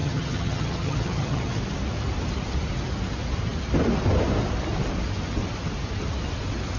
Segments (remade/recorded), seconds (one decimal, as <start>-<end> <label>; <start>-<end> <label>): 0.0-1.6 remade; 1.6-6.8 recorded